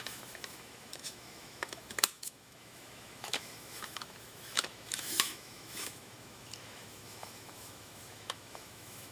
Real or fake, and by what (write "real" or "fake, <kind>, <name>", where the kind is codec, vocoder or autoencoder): fake, autoencoder, DAC-VAE